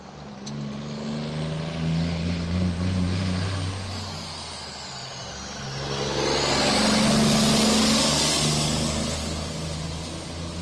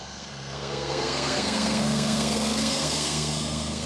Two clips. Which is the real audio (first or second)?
first